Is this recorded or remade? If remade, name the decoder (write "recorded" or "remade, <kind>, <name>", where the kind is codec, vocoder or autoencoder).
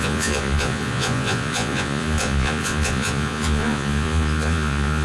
remade, vocoder, Vocos